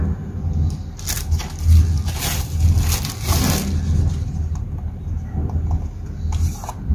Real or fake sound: real